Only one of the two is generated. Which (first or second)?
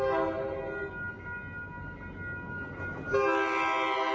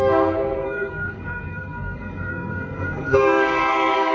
second